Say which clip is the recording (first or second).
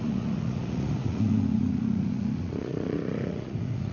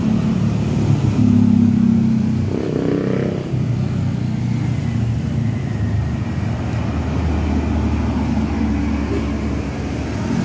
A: second